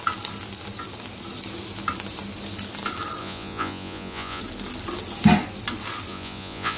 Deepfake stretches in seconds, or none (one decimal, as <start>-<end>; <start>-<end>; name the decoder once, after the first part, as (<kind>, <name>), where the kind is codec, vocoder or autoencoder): 3.2-4.4 (vocoder, Vocos); 6.1-6.8

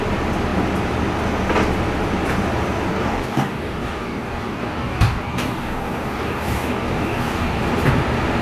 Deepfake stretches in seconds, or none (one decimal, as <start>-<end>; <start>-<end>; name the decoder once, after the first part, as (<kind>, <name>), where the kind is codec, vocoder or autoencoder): 2.9-7.6 (codec, DAC)

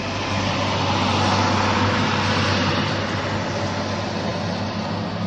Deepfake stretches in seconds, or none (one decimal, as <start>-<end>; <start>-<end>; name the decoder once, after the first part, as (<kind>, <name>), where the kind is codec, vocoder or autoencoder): none